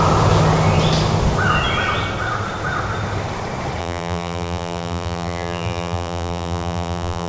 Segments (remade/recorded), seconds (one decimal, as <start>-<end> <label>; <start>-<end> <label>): 0.0-3.8 recorded; 3.8-7.3 remade